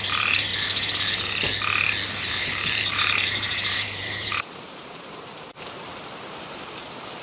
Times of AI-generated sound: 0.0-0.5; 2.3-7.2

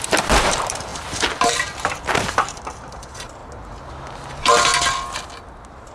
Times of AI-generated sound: 0.0-3.4; 4.3-4.7